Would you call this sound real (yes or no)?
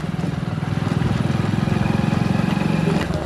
yes